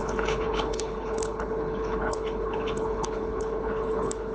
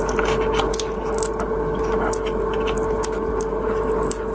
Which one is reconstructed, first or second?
first